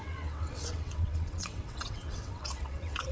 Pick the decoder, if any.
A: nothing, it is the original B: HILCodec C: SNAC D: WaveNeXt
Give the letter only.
D